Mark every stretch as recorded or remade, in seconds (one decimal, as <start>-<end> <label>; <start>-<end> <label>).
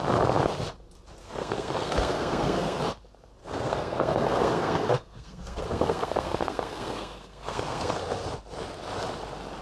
0.0-1.2 recorded; 1.2-2.8 remade; 2.8-3.4 recorded; 3.4-8.0 remade; 8.0-9.6 recorded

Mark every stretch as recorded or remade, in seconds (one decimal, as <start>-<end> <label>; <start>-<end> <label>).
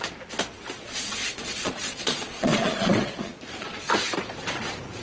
0.0-0.9 recorded; 0.9-3.9 remade; 3.9-5.0 recorded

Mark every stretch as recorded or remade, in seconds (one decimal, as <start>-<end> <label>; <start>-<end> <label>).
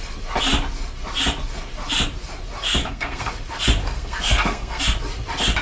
0.0-2.8 recorded; 2.8-3.3 remade; 3.3-3.8 recorded; 3.8-4.8 remade; 4.8-5.6 recorded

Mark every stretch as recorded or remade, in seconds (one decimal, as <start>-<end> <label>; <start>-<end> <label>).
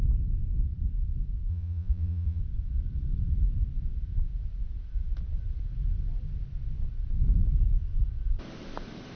0.0-1.5 recorded; 1.5-2.4 remade; 2.4-9.2 recorded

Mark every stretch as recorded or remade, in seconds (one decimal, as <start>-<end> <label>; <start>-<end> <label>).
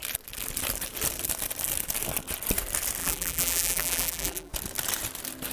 0.0-3.0 recorded; 3.0-4.5 remade; 4.5-5.5 recorded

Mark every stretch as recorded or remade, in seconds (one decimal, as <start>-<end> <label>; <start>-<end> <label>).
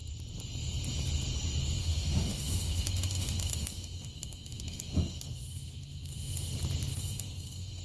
0.0-1.8 recorded; 1.8-6.5 remade; 6.5-6.9 recorded; 6.9-7.8 remade